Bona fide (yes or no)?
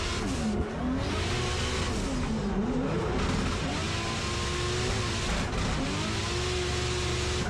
yes